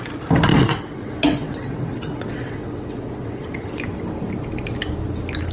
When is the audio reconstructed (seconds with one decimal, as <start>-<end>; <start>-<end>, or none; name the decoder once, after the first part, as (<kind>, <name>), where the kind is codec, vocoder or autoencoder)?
0.5-3.8 (vocoder, WaveNeXt)